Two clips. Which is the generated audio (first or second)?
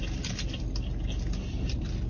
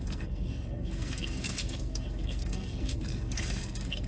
second